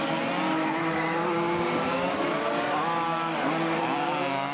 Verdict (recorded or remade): recorded